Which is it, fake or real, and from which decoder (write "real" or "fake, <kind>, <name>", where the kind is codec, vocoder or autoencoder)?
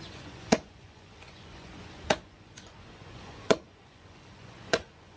fake, vocoder, Vocos